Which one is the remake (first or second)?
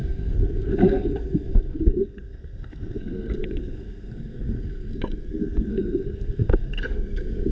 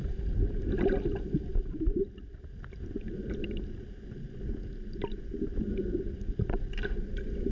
first